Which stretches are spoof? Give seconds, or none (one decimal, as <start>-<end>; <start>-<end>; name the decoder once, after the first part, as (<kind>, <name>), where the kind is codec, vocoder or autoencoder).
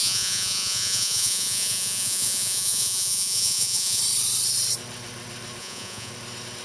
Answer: 0.0-4.0 (vocoder, Vocos); 5.6-6.1